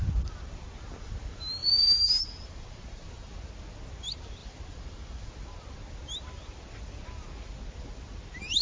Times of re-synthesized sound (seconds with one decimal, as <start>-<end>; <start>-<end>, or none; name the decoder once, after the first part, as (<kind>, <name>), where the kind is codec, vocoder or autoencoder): 1.6-3.5 (vocoder, BigVGAN v2); 4.4-5.4